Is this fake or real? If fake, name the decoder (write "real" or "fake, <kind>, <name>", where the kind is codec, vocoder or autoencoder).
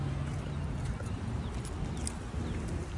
real